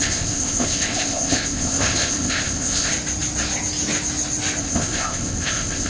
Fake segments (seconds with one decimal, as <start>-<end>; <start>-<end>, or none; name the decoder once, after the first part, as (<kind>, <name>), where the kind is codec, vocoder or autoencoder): 0.0-2.9 (codec, ZipCodec); 4.6-5.9